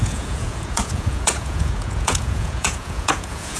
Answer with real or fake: fake